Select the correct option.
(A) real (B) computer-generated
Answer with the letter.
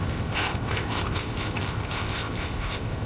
B